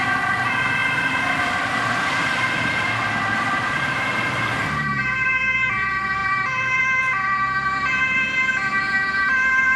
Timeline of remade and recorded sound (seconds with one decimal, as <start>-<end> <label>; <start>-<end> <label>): 0.0-9.8 remade